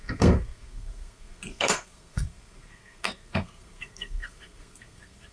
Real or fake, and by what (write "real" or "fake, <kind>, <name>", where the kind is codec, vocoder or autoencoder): fake, codec, SNAC